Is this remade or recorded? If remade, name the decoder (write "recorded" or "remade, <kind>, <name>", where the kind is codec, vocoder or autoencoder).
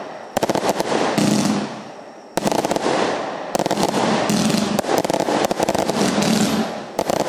recorded